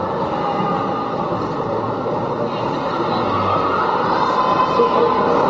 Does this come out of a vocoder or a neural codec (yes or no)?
no